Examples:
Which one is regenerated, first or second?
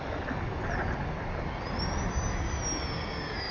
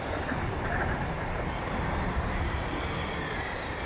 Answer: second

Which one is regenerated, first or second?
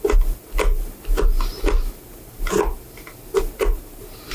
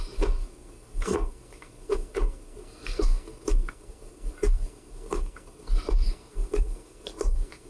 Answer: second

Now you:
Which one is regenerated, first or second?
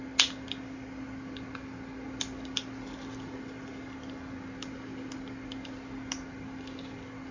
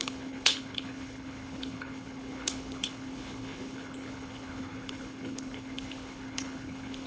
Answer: second